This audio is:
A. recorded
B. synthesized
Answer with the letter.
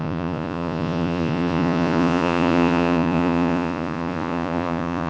B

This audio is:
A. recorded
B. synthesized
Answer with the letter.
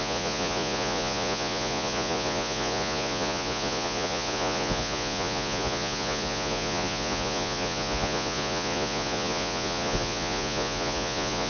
B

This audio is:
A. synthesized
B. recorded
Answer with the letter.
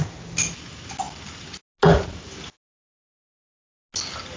B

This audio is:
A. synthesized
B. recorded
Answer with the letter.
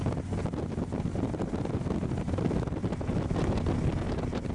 B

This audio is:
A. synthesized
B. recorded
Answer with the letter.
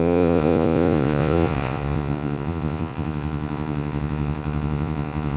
A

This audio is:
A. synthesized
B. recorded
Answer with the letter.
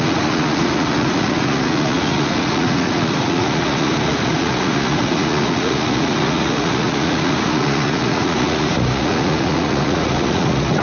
A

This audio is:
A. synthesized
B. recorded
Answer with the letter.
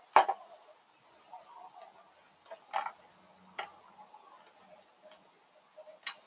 B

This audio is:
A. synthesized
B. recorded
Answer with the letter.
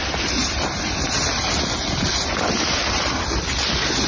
B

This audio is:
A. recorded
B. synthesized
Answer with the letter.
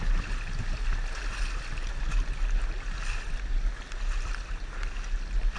A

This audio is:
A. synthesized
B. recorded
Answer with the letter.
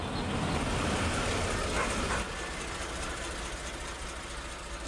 B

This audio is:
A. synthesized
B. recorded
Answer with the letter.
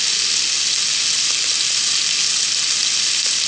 B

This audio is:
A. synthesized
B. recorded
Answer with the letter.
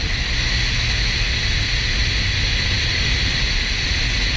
B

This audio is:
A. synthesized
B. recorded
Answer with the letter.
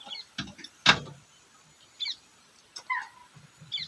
B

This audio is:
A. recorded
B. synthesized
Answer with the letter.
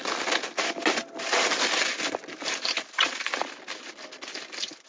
A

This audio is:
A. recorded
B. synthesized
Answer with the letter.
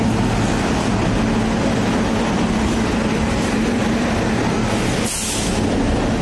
A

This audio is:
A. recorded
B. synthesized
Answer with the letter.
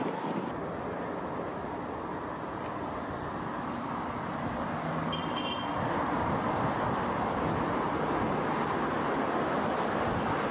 A